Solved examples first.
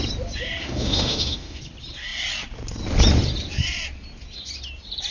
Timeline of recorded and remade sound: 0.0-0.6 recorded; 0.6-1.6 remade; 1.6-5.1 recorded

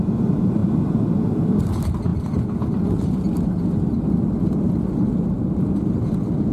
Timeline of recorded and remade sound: 0.0-6.5 recorded

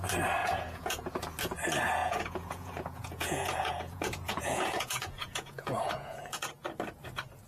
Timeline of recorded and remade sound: 0.0-0.4 recorded; 0.4-1.1 remade; 1.1-2.0 recorded; 2.0-6.5 remade; 6.5-7.5 recorded

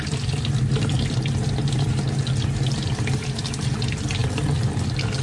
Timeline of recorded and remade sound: 0.0-5.2 recorded

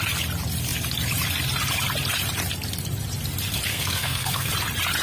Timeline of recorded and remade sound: 0.0-3.7 recorded; 3.7-4.5 remade; 4.5-5.0 recorded

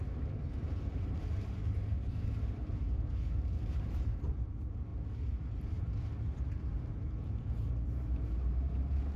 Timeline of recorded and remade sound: 0.0-4.9 remade; 4.9-5.5 recorded; 5.5-9.2 remade

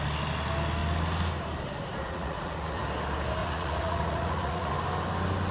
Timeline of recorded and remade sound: 0.0-2.0 recorded; 2.0-2.8 remade; 2.8-3.4 recorded; 3.4-4.7 remade; 4.7-5.5 recorded

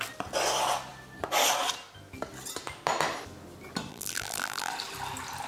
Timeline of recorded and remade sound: 0.0-3.9 recorded; 3.9-4.7 remade; 4.7-5.5 recorded